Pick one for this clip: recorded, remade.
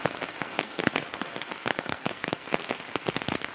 remade